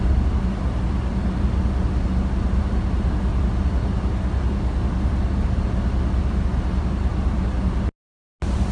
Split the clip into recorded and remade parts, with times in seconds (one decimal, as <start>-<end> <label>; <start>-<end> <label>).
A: 0.0-8.7 recorded